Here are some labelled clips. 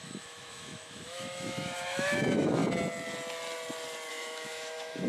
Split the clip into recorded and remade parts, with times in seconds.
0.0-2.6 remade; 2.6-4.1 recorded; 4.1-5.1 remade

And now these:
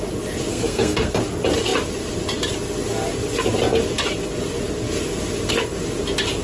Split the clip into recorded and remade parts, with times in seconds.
0.0-0.5 recorded; 0.5-1.2 remade; 1.2-6.4 recorded

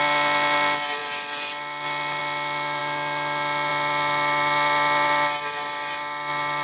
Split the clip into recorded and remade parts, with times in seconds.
0.0-6.6 recorded

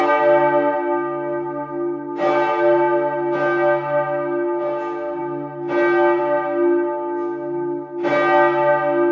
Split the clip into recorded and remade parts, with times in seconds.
0.0-9.1 recorded